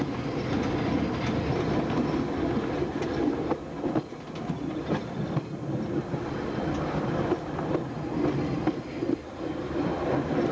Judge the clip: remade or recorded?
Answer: recorded